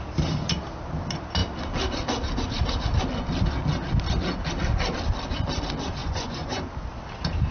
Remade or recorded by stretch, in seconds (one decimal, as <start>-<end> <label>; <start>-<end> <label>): 0.0-6.0 recorded; 6.0-6.6 remade; 6.6-7.5 recorded

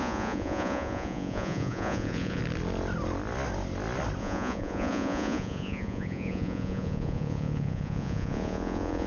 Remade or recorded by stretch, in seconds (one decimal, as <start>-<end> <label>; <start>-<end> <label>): 0.0-2.4 remade; 2.4-4.2 recorded; 4.2-9.1 remade

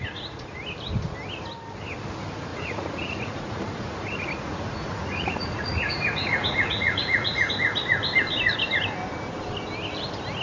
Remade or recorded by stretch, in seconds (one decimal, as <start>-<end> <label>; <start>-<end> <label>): 0.0-0.6 remade; 0.6-2.5 recorded; 2.5-7.5 remade; 7.5-10.4 recorded

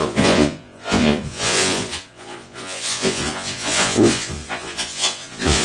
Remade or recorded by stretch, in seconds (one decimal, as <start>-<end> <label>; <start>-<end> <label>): 0.0-5.6 remade

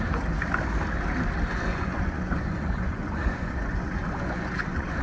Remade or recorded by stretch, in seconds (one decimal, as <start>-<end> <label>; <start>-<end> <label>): 0.0-1.7 recorded; 1.7-5.0 remade